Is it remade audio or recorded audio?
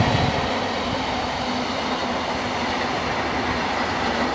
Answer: recorded